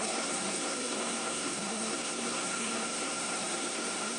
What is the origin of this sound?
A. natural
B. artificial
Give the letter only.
B